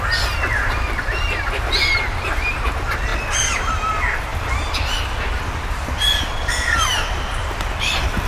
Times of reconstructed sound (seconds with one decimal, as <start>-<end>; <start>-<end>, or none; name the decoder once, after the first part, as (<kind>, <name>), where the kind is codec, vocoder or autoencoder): 4.3-5.1 (vocoder, BigVGAN v2)